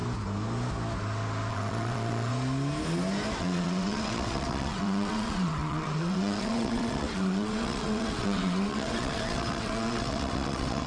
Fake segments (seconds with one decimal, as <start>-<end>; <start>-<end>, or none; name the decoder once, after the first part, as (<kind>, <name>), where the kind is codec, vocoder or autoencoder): 1.5-2.3 (vocoder, WaveNeXt); 3.4-10.9